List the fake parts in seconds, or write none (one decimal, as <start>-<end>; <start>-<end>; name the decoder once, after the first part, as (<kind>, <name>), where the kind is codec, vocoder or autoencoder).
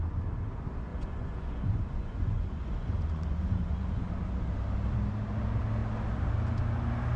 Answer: 0.9-4.1 (vocoder, Vocos)